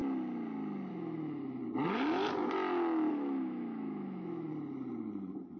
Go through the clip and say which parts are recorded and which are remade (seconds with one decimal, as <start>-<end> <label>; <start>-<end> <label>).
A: 0.0-0.9 recorded; 0.9-1.6 remade; 1.6-3.1 recorded; 3.1-4.5 remade; 4.5-5.6 recorded